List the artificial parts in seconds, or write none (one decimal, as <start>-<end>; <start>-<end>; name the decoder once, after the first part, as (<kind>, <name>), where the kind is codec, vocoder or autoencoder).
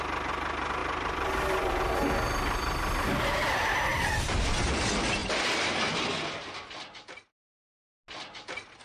0.8-2.0 (vocoder, BigVGAN v2); 3.9-4.5; 5.2-5.7